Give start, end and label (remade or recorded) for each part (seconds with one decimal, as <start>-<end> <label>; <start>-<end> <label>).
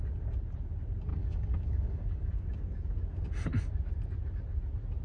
0.0-1.1 recorded; 1.1-2.3 remade; 2.3-5.0 recorded